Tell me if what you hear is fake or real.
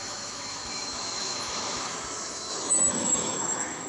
fake